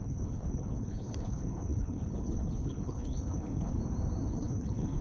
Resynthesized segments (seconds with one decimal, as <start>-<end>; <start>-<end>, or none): 0.0-3.8; 4.3-5.0